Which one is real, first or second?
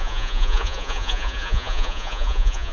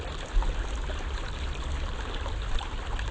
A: second